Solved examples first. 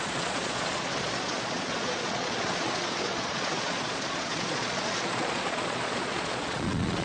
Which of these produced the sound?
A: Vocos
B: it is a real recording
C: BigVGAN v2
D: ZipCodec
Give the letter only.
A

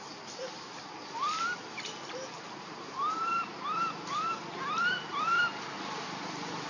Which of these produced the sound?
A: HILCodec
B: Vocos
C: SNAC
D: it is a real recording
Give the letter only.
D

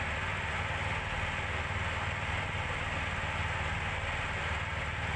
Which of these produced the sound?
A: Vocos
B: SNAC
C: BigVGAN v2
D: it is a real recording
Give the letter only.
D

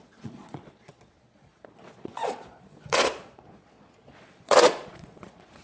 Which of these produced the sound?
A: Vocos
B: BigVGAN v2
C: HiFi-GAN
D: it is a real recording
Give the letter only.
A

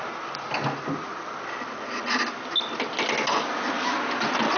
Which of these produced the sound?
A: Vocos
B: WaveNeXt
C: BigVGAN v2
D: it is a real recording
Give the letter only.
D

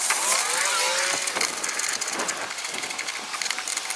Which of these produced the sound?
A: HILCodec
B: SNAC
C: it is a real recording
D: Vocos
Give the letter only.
C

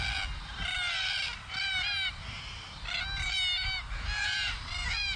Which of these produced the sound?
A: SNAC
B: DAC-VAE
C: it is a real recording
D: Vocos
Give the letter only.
C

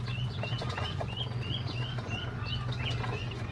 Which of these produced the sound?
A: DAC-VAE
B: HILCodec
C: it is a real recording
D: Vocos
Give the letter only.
D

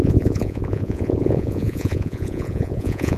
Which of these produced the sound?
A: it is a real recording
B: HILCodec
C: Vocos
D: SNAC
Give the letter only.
C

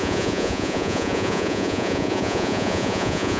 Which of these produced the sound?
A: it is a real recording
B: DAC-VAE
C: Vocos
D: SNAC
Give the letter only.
C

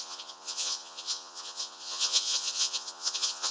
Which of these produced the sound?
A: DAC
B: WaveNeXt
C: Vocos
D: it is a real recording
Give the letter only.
C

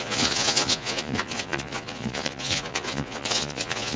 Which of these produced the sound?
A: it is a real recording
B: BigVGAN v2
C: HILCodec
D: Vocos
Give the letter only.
D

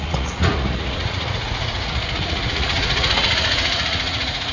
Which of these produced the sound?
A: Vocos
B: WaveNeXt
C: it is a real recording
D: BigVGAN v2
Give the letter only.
A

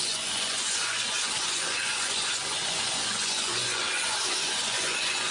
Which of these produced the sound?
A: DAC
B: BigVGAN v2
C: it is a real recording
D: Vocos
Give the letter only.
D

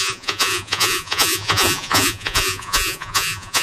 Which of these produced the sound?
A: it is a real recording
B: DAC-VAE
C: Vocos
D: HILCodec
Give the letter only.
C